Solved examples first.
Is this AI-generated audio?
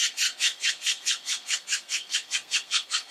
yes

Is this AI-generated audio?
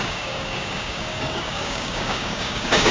yes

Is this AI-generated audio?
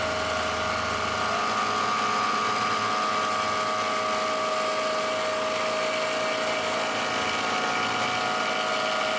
no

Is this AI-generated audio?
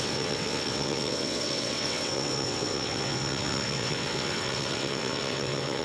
yes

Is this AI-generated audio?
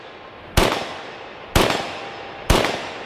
no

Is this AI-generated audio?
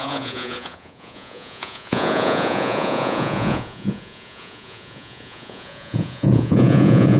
yes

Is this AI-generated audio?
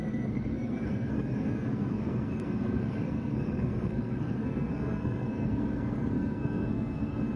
yes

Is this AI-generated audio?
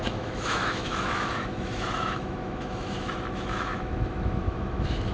yes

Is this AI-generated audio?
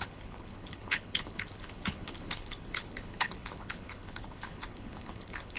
yes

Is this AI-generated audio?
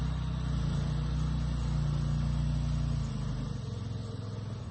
no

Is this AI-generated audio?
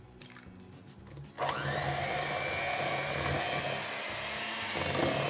no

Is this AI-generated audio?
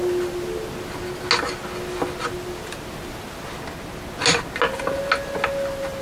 no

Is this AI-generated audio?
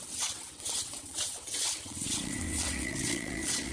yes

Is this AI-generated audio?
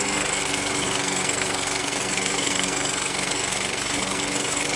yes